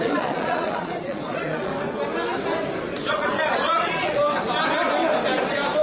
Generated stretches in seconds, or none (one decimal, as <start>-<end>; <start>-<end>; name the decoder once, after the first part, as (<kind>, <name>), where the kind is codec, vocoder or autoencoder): 0.0-1.7 (vocoder, Vocos); 3.1-4.2